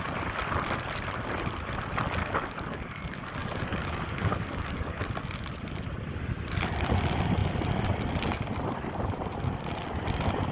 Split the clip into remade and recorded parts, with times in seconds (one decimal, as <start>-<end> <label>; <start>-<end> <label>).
0.0-2.2 recorded; 2.2-3.0 remade; 3.0-3.4 recorded; 3.4-5.1 remade; 5.1-10.5 recorded

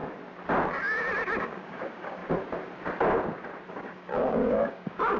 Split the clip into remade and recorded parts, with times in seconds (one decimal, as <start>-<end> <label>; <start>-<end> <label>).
0.0-1.4 recorded; 1.4-2.2 remade; 2.2-3.7 recorded; 3.7-5.2 remade